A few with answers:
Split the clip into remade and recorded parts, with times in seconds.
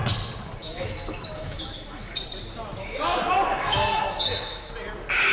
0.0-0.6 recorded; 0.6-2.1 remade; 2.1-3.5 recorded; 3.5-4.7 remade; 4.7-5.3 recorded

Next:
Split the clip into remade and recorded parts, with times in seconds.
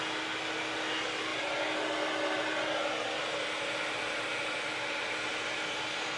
0.0-6.2 recorded